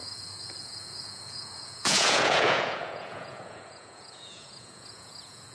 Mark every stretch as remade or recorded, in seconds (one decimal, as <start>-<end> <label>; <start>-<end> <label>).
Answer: 0.0-5.5 remade